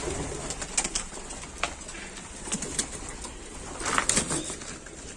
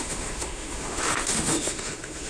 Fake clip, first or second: second